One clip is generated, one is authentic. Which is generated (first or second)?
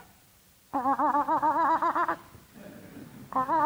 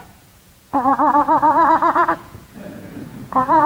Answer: second